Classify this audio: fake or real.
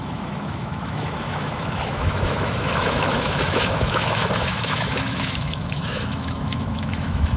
fake